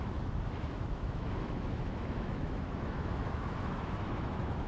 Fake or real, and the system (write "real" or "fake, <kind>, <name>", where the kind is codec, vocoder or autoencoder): fake, autoencoder, DAC-VAE